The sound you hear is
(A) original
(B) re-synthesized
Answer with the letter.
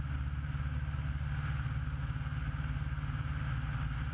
A